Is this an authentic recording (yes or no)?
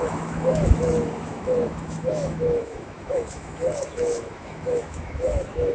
no